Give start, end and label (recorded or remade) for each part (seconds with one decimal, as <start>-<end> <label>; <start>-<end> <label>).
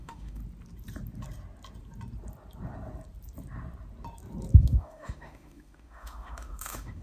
0.0-0.4 remade; 0.4-4.6 recorded; 4.6-7.0 remade